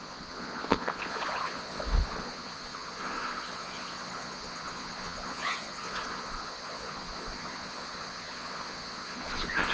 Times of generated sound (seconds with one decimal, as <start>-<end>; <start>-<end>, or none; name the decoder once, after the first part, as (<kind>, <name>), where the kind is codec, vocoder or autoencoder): 0.0-9.7 (vocoder, Vocos)